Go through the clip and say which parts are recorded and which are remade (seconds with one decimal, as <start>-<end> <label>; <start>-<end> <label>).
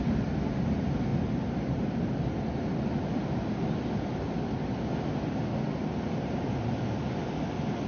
0.0-1.1 recorded; 1.1-2.7 remade; 2.7-7.9 recorded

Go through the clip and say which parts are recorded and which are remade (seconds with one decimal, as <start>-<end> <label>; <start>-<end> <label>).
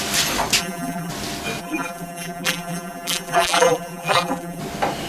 0.0-0.6 recorded; 0.6-1.1 remade; 1.1-1.6 recorded; 1.6-4.6 remade; 4.6-5.1 recorded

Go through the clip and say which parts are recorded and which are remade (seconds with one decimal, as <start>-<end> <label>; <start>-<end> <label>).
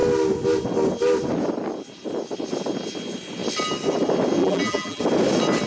0.0-4.4 recorded; 4.4-5.0 remade; 5.0-5.7 recorded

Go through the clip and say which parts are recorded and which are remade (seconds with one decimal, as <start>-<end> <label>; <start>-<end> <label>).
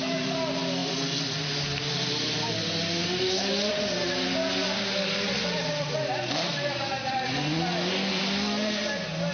0.0-9.3 recorded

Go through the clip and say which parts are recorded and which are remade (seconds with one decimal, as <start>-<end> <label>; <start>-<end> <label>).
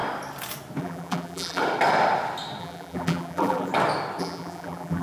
0.0-0.8 recorded; 0.8-1.6 remade; 1.6-2.6 recorded; 2.6-3.7 remade; 3.7-4.2 recorded; 4.2-5.0 remade